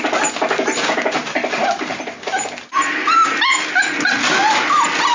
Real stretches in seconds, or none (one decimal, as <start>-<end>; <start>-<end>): 0.0-5.1

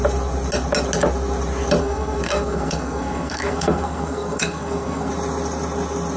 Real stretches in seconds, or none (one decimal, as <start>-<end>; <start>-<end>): 0.0-1.8; 5.1-6.2

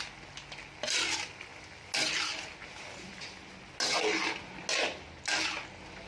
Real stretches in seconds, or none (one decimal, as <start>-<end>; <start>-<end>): 0.0-6.1